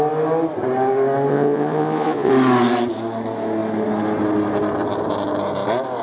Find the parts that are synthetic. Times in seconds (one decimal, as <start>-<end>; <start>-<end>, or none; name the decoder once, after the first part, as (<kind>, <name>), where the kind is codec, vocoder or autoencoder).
1.3-2.3 (vocoder, Vocos)